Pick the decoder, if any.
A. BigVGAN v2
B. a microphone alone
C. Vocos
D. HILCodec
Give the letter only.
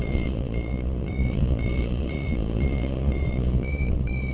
C